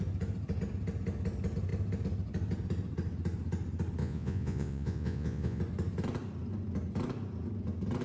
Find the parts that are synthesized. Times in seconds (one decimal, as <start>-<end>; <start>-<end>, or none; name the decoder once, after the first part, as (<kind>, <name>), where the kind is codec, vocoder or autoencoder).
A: 4.0-5.6 (vocoder, Vocos)